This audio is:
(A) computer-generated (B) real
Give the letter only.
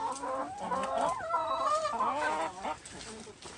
B